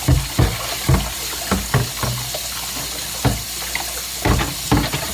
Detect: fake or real real